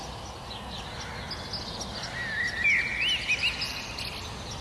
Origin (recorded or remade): recorded